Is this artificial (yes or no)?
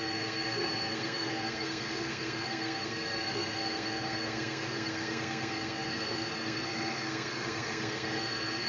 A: yes